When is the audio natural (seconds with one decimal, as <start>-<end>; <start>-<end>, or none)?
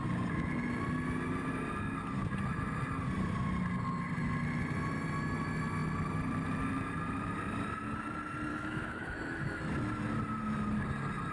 0.0-8.5; 9.6-11.3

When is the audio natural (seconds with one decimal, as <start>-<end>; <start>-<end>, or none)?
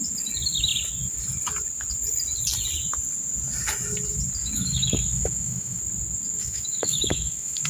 0.0-4.4; 5.8-6.4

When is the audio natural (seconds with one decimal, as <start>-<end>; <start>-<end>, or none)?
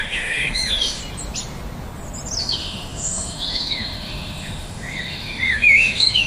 1.0-2.4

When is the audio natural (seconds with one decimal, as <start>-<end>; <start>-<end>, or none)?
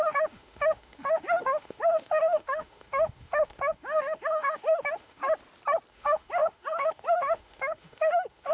5.2-5.9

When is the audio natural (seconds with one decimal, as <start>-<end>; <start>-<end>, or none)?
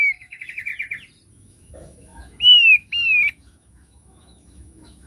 0.7-1.3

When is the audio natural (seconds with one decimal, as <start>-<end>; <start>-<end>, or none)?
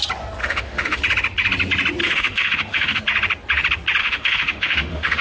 0.0-0.4; 1.0-2.0; 3.0-4.0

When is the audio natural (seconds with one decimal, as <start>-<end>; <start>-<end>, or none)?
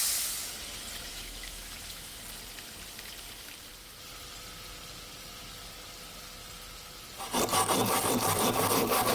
0.0-1.1; 2.2-9.1